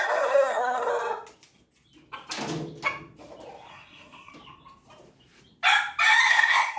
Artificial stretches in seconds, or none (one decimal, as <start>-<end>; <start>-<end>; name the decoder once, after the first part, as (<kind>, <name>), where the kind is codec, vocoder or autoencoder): 0.0-0.9 (codec, SNAC); 3.7-4.3; 6.3-6.8